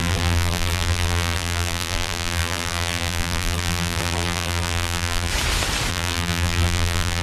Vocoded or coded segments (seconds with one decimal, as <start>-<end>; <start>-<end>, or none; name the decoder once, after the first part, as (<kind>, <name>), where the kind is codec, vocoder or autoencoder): 0.0-5.3 (vocoder, BigVGAN v2); 5.9-7.2